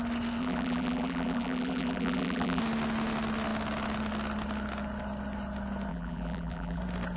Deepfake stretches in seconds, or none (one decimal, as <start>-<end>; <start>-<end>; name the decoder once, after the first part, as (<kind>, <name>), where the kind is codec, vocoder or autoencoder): 0.4-2.6 (vocoder, BigVGAN v2); 5.9-6.8